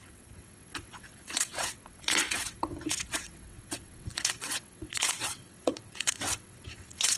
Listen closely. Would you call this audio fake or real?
fake